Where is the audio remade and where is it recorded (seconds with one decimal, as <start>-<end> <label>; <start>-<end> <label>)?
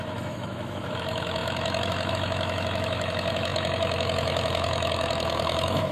0.0-5.9 remade